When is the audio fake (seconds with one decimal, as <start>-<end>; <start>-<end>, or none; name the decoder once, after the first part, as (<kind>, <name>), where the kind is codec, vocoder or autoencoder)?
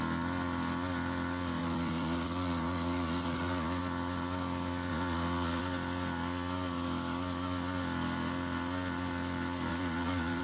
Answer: 1.6-3.8 (vocoder, Vocos); 4.9-5.6; 9.7-10.4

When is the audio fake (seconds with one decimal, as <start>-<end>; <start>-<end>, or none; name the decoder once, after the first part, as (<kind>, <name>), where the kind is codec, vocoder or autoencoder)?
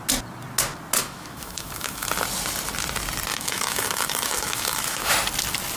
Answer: 1.0-2.1 (autoencoder, DAC-VAE); 3.3-5.1